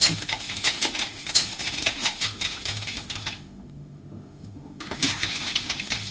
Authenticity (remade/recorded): remade